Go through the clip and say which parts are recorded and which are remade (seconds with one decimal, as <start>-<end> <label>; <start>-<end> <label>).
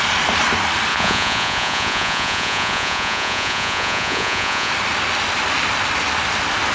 0.0-0.9 recorded; 0.9-4.7 remade; 4.7-6.7 recorded